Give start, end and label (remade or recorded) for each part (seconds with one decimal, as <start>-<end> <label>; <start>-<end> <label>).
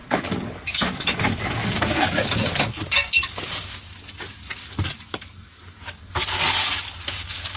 0.0-7.6 remade